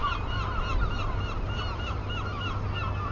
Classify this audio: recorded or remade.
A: recorded